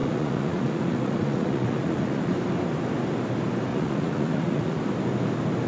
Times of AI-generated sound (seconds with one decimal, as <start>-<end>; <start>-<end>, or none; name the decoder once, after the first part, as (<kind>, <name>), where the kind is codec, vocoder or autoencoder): 0.0-2.3 (vocoder, Vocos); 3.7-4.8